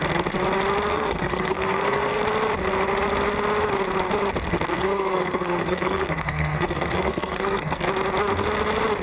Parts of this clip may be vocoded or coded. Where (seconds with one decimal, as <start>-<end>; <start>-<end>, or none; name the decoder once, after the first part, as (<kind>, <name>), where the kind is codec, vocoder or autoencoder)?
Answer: 0.9-2.2 (codec, SNAC); 4.7-7.8